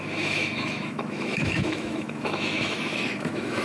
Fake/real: fake